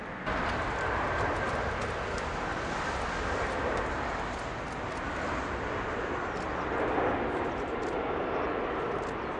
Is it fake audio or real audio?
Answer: real